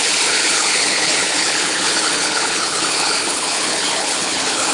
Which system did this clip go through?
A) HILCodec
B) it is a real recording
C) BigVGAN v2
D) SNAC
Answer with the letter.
A